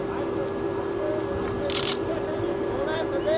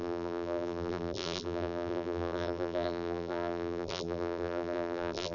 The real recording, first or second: first